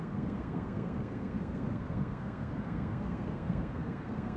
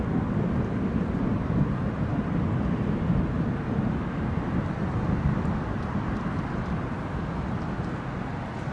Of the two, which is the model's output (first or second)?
first